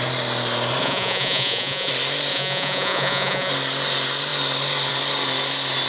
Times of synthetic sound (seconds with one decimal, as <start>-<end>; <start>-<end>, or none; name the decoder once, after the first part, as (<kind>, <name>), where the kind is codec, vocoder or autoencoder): 0.8-1.9 (vocoder, Vocos); 2.3-3.5